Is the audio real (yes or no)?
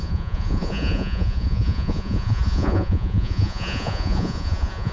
no